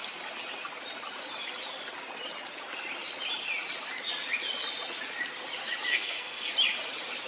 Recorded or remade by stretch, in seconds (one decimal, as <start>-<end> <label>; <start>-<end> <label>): 0.0-5.9 recorded; 5.9-6.5 remade; 6.5-7.3 recorded